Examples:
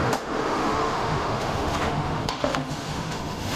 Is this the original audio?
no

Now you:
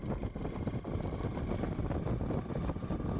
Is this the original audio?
yes